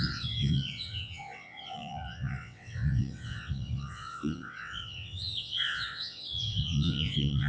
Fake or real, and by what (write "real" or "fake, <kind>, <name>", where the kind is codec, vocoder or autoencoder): fake, vocoder, WaveNeXt